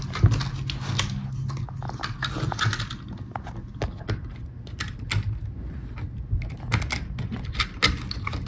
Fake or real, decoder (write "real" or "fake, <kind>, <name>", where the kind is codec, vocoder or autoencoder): real